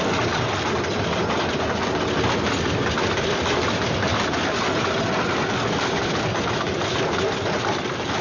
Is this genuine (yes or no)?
yes